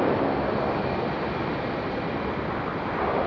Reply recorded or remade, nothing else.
remade